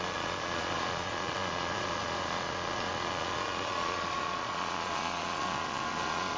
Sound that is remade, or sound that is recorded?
remade